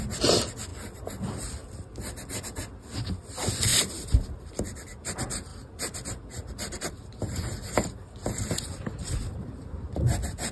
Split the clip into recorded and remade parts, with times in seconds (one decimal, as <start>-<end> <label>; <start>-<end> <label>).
0.0-3.7 recorded; 3.7-4.5 remade; 4.5-5.5 recorded; 5.5-6.9 remade; 6.9-9.0 recorded; 9.0-9.9 remade; 9.9-10.5 recorded